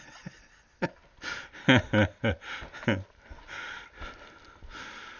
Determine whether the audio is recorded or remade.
recorded